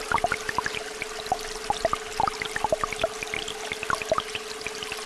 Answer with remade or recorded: recorded